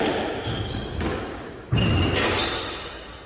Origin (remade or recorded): recorded